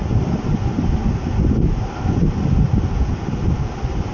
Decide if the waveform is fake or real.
real